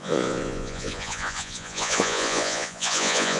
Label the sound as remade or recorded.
remade